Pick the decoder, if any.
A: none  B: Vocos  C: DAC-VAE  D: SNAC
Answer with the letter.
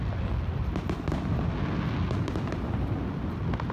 A